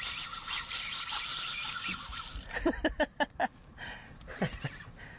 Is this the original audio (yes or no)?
no